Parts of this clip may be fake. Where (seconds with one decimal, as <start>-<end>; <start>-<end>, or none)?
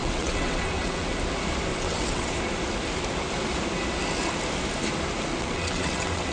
0.0-1.1; 1.7-2.3; 5.3-6.3